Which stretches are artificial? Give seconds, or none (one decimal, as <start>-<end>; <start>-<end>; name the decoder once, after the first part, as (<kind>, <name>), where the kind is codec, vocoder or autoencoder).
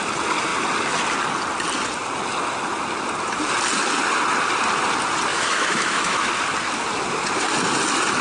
5.3-6.3 (autoencoder, DAC-VAE)